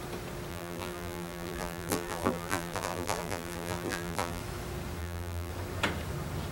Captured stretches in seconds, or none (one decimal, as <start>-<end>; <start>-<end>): 0.0-0.5; 4.4-5.0; 5.5-6.5